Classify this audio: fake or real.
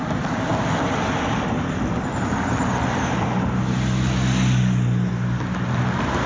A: real